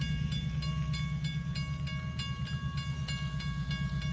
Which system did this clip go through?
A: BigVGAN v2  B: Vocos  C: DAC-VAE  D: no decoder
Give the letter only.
D